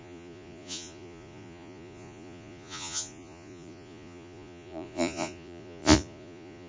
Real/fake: fake